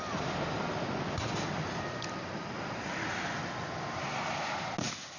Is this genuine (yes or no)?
yes